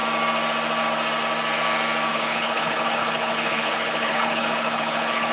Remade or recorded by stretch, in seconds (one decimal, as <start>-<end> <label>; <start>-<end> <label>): 0.0-2.1 recorded; 2.1-5.3 remade

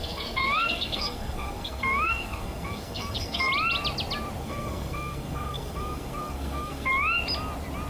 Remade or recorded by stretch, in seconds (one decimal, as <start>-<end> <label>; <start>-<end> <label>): 0.0-3.5 remade; 3.5-4.4 recorded; 4.4-6.9 remade; 6.9-7.9 recorded

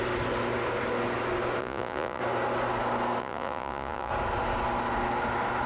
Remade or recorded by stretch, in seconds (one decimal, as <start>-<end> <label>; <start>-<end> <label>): 0.0-1.6 recorded; 1.6-2.2 remade; 2.2-3.2 recorded; 3.2-4.1 remade; 4.1-5.7 recorded

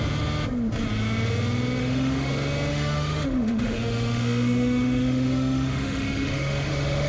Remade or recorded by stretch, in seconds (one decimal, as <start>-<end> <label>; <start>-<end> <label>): 0.0-1.8 recorded; 1.8-2.3 remade; 2.3-2.7 recorded; 2.7-7.1 remade

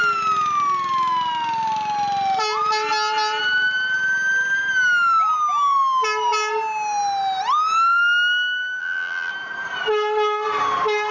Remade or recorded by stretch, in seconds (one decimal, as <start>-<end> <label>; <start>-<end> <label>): 0.0-8.8 recorded; 8.8-9.3 remade; 9.3-11.1 recorded